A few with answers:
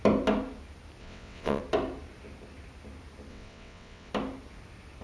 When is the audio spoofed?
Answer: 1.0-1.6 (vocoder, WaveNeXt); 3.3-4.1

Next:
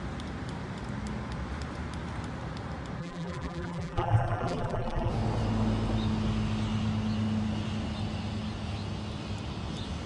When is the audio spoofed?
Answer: 3.0-5.1 (vocoder, BigVGAN v2)

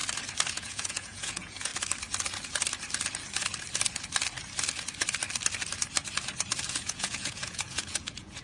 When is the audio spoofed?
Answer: 0.5-1.7 (vocoder, Vocos); 6.7-8.4

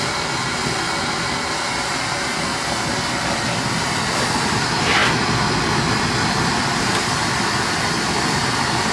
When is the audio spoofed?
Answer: none